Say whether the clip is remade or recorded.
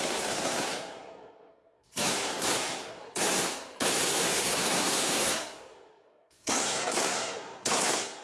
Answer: remade